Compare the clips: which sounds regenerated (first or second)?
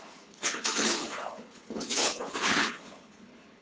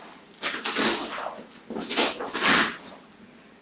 first